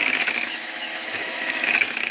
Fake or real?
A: fake